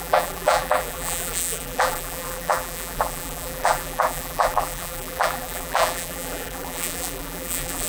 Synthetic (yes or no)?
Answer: yes